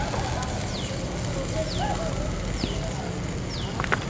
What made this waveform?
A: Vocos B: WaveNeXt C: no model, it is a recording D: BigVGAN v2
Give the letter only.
C